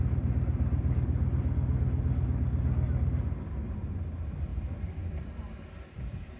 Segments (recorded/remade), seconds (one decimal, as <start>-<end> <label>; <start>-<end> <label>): 0.0-4.5 recorded; 4.5-5.4 remade; 5.4-6.4 recorded